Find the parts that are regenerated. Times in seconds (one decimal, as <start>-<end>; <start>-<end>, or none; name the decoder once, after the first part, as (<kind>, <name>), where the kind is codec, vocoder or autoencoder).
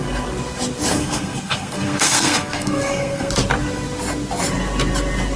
0.9-3.3 (codec, SNAC)